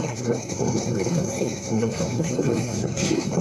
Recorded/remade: remade